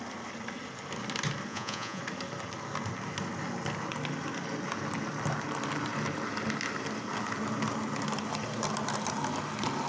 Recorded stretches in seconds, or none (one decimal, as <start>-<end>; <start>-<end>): 0.0-1.5; 2.0-9.9